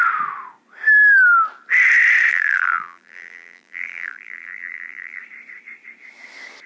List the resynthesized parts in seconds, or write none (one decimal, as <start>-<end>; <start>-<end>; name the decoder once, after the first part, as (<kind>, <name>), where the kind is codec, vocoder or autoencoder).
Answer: 2.3-5.2 (vocoder, BigVGAN v2)